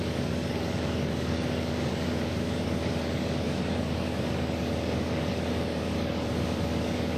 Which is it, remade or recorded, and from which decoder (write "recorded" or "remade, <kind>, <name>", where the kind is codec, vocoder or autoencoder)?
remade, codec, DAC